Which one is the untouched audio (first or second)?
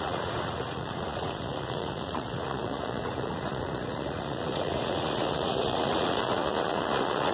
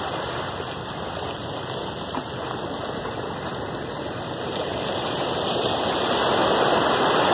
second